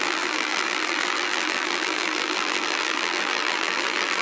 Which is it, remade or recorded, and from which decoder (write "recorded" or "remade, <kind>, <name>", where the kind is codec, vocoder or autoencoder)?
remade, vocoder, BigVGAN v2